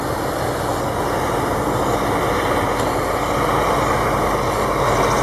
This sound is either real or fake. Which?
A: real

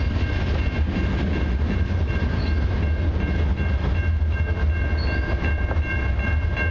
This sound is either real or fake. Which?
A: real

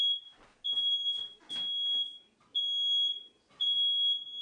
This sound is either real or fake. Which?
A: real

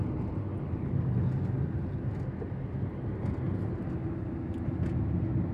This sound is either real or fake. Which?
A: real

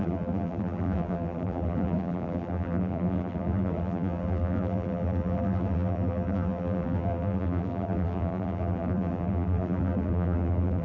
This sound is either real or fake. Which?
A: fake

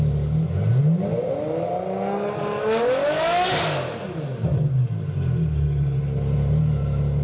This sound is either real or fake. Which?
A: real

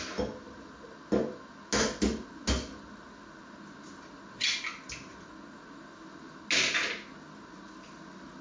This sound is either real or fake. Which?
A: real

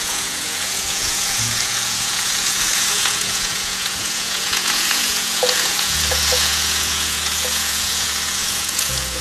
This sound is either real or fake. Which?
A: fake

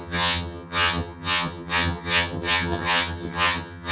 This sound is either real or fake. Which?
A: fake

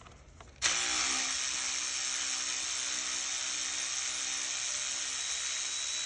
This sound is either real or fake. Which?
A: real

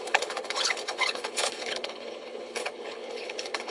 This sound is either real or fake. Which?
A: fake